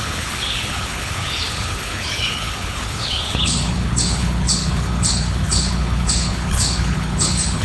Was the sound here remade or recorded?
remade